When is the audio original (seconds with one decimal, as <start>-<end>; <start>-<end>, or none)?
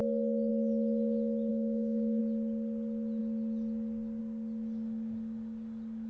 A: 0.0-1.5; 2.2-6.1